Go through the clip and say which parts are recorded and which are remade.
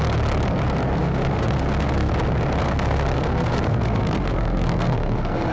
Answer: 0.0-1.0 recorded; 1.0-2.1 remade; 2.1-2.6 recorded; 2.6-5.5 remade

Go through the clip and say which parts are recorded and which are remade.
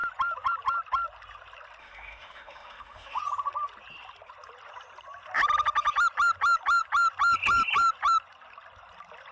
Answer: 0.0-1.8 recorded; 1.8-3.2 remade; 3.2-9.3 recorded